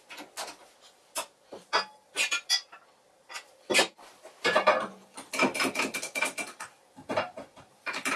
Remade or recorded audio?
recorded